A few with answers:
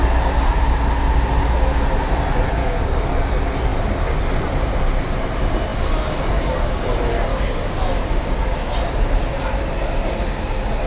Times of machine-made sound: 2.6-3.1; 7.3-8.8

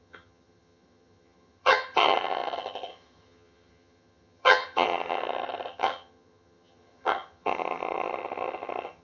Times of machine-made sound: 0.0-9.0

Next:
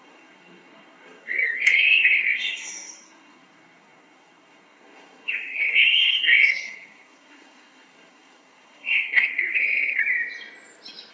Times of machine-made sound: 0.0-10.0

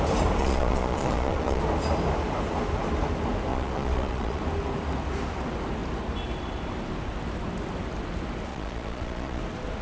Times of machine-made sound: 0.4-1.6; 3.5-4.4; 8.5-9.4

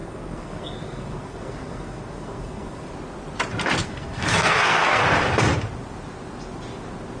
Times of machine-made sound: 0.0-2.9; 3.8-5.0

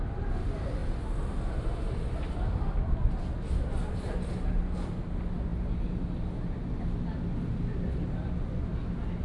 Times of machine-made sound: none